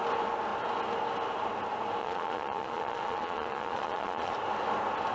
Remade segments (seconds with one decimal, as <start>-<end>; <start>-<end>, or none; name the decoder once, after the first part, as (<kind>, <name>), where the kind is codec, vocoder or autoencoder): 2.0-4.3 (vocoder, Vocos)